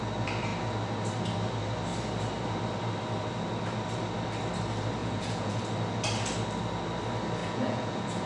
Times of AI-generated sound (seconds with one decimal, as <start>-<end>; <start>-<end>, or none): 5.0-5.6; 7.4-8.3